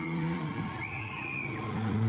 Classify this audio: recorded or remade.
remade